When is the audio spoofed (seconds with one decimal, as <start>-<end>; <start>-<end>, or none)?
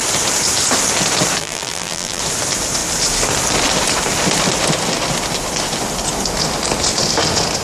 1.4-2.2